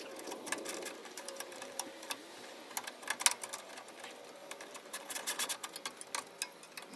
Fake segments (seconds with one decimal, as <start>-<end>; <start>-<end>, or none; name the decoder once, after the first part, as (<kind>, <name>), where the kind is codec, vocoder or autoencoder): 1.0-2.7 (vocoder, BigVGAN v2); 4.4-5.5